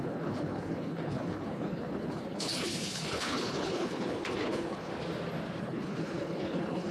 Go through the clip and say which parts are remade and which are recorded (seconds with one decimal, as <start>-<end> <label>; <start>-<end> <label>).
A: 0.0-4.9 remade; 4.9-5.6 recorded; 5.6-6.9 remade